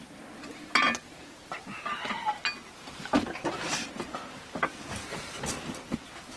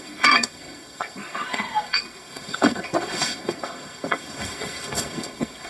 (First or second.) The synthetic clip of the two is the second